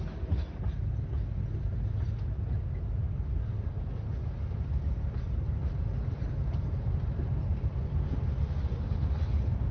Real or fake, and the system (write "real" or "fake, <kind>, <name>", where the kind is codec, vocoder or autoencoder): real